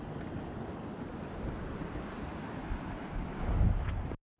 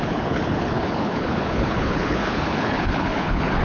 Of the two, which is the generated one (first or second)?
second